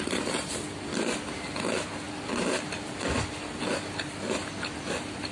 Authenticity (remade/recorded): recorded